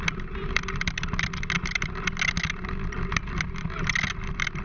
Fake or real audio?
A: real